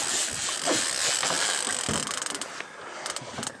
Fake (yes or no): no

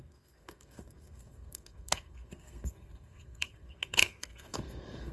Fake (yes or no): yes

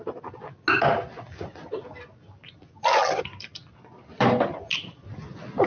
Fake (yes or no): no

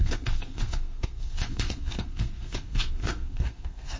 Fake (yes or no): yes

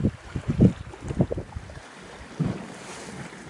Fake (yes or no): no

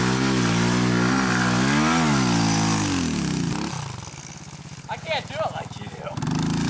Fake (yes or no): no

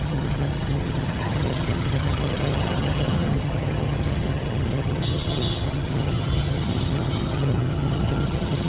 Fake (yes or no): yes